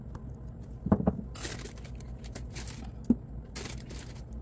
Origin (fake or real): real